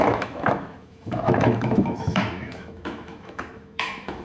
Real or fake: fake